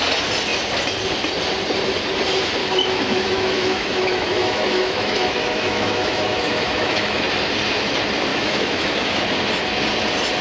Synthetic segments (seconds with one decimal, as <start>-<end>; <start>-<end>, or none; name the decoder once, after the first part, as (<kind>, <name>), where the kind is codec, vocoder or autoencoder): 2.6-7.2 (autoencoder, DAC-VAE); 8.3-9.2

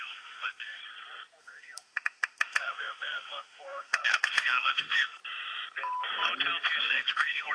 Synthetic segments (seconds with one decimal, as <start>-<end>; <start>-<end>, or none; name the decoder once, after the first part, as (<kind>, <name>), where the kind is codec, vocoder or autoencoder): 0.0-0.8 (autoencoder, DAC-VAE); 1.4-5.2; 6.8-7.5

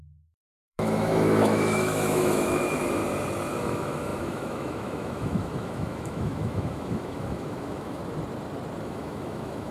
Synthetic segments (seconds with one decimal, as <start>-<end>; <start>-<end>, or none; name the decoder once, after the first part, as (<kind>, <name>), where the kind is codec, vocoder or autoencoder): 0.0-3.0 (autoencoder, DAC-VAE); 3.5-8.0; 8.8-9.7

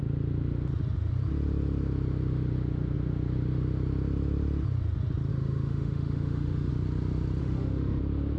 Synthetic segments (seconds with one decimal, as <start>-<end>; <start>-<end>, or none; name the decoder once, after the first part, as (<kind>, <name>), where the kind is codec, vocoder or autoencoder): 5.3-6.7 (autoencoder, DAC-VAE); 7.4-8.0

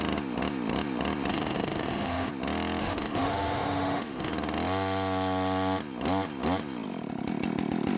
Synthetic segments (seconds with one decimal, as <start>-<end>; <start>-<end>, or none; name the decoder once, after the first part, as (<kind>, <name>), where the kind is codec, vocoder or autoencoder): 1.3-2.3 (autoencoder, DAC-VAE); 2.8-4.3

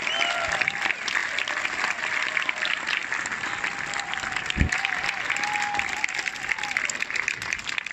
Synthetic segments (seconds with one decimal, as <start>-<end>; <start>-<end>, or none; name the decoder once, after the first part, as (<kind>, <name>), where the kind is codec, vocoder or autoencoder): none